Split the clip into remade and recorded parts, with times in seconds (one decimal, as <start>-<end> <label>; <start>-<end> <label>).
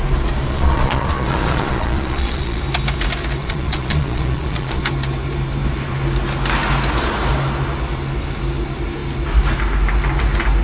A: 0.0-0.5 recorded; 0.5-2.6 remade; 2.6-3.4 recorded; 3.4-4.8 remade; 4.8-10.6 recorded